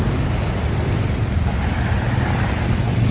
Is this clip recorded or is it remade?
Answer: recorded